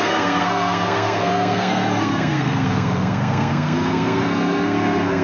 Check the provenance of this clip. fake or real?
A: fake